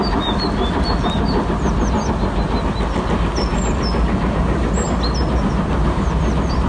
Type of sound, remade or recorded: recorded